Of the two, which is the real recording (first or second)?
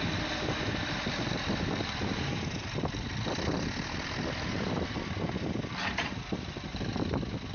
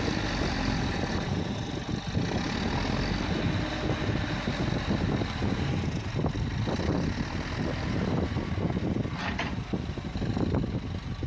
second